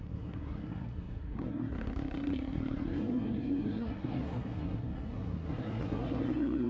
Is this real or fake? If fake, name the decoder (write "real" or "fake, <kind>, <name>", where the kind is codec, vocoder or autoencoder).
fake, codec, SNAC